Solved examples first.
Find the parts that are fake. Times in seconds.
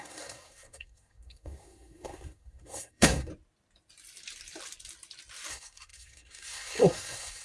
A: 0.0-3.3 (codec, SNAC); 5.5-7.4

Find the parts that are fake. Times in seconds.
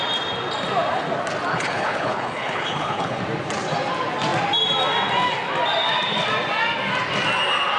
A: 1.5-3.2 (codec, HILCodec)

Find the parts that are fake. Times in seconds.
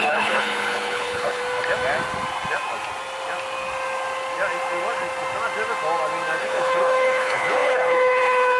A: 0.0-1.4 (codec, HILCodec); 6.4-8.6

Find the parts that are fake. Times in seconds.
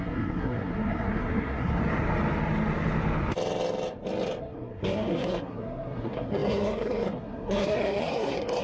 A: 0.0-1.8 (codec, SNAC); 4.4-8.6